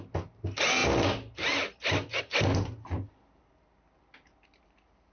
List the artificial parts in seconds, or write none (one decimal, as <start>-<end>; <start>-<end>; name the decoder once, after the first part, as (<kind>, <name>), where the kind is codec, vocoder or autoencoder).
none